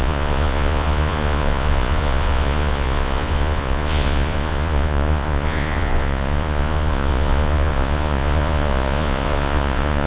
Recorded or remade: remade